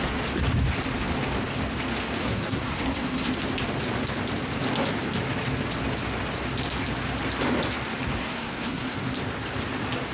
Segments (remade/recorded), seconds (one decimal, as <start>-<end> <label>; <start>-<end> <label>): 0.0-2.2 recorded; 2.2-3.3 remade; 3.3-8.2 recorded; 8.2-9.0 remade; 9.0-10.1 recorded